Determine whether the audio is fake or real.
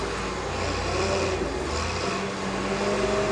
real